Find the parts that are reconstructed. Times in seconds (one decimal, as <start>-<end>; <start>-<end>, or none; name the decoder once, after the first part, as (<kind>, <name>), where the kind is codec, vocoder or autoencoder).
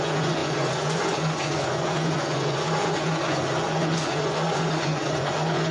0.0-5.7 (vocoder, Vocos)